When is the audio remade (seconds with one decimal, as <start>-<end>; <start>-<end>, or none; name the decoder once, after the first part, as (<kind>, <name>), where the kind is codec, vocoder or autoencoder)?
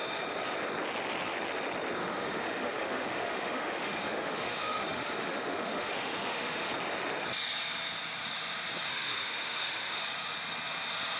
2.0-6.7 (autoencoder, DAC-VAE); 8.9-10.0